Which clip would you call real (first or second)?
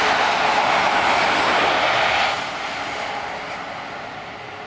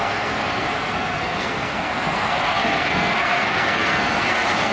first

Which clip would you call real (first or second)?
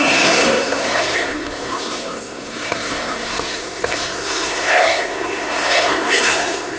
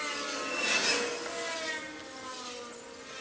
second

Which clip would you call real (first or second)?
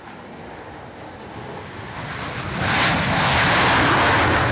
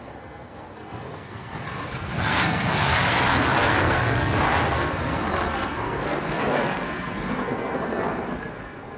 first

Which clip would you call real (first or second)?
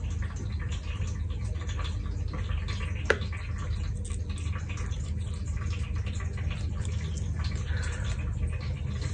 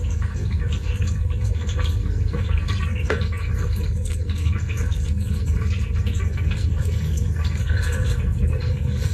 first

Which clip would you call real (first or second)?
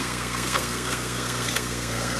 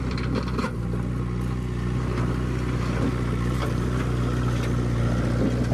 second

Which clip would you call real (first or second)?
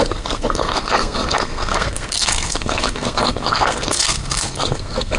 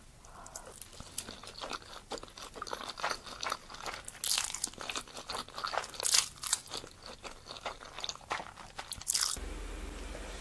second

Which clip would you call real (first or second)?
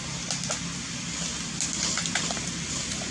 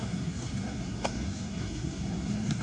first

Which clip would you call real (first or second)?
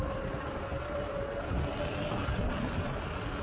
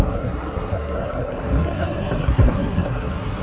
first